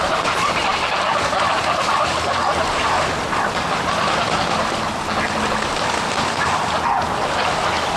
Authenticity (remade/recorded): recorded